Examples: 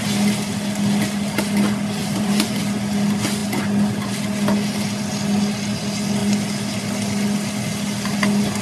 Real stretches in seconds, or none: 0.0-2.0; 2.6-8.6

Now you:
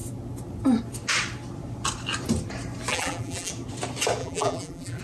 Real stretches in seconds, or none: 0.0-2.9; 3.5-4.2

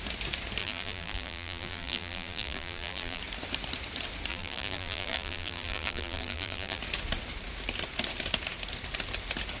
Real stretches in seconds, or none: 0.0-0.6; 3.2-4.3; 6.8-9.6

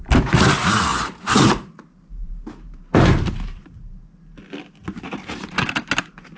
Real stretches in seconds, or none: 0.0-0.9; 4.0-6.4

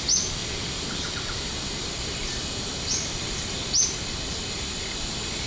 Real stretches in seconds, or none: 0.0-0.4; 2.3-5.5

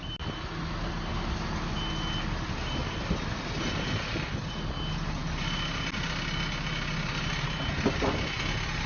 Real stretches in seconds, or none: 0.0-2.8; 3.5-8.9